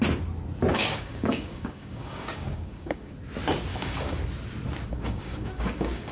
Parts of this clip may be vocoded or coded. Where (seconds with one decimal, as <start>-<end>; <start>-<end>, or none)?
0.7-3.1; 3.7-4.2; 4.9-6.1

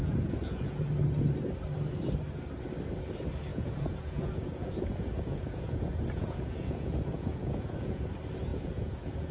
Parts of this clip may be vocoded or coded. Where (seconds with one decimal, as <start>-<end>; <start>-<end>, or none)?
0.0-0.8; 3.5-8.0; 8.5-9.3

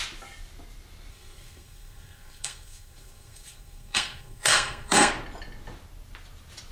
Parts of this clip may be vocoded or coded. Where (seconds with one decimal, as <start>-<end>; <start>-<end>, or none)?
1.1-5.1

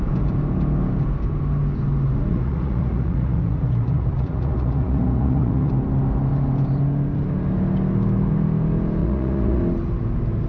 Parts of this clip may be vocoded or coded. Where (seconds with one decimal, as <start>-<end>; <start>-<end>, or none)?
2.3-5.7; 9.0-9.6